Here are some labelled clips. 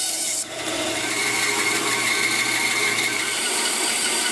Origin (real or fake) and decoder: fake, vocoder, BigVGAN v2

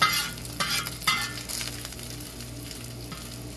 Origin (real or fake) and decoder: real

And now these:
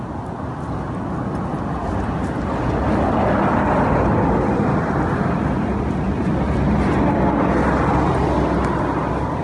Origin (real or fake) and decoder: real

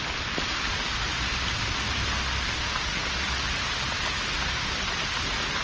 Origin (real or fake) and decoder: real